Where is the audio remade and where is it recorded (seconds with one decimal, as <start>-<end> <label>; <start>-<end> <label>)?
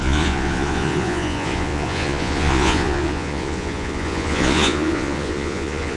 0.0-6.0 remade